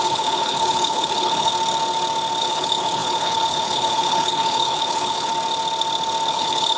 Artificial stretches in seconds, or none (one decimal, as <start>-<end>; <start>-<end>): 0.0-1.5; 2.4-5.3; 6.3-6.8